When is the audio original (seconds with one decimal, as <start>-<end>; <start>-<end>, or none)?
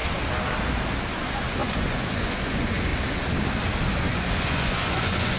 0.0-1.1; 2.9-4.0